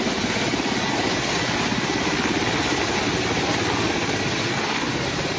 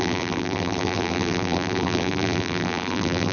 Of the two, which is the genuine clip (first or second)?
first